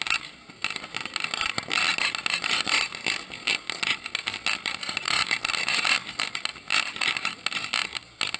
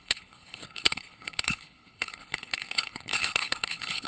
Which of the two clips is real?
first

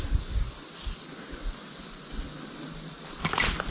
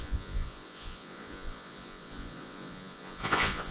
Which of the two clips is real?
first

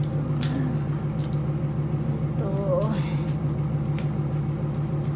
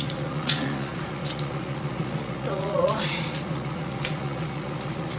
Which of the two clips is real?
first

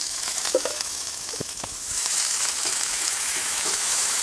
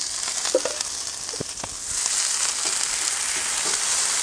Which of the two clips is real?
second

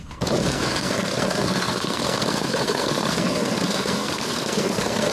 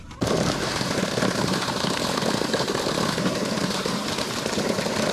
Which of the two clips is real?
second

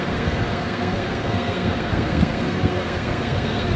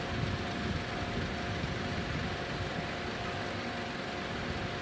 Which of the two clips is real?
second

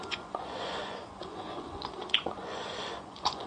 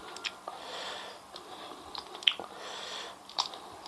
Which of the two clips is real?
second